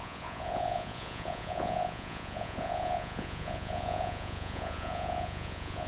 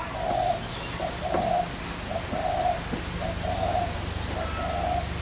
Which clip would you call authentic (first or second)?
second